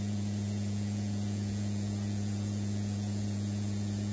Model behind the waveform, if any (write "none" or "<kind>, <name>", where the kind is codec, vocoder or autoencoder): vocoder, Vocos